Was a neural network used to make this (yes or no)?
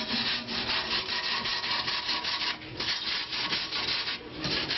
no